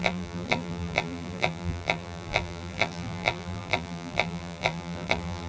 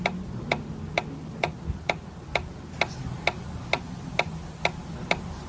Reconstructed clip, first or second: first